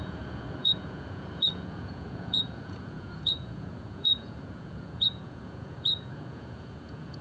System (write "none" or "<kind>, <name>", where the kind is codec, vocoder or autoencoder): vocoder, Vocos